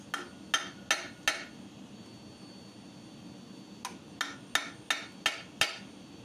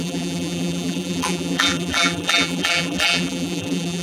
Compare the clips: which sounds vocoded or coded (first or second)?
second